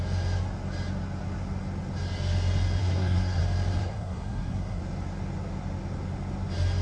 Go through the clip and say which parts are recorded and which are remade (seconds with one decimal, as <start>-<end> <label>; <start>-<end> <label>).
0.0-2.8 recorded; 2.8-3.4 remade; 3.4-3.8 recorded; 3.8-4.8 remade; 4.8-6.8 recorded